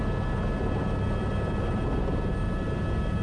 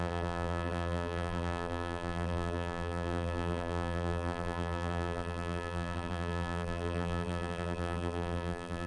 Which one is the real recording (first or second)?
first